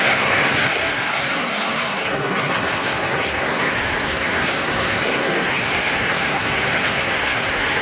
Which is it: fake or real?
fake